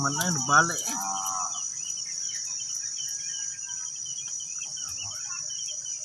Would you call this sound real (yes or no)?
yes